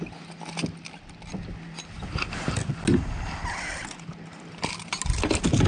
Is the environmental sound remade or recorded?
recorded